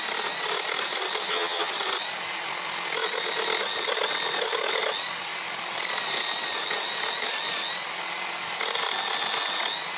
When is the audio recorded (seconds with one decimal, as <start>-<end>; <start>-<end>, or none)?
0.0-1.2; 1.7-10.0